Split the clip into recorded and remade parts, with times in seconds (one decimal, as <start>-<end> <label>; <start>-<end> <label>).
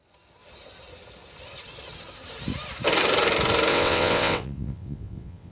0.0-3.7 recorded; 3.7-5.5 remade